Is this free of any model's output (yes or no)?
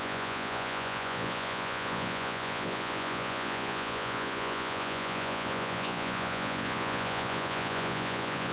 no